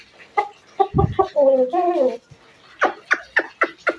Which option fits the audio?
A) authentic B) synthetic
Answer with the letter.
A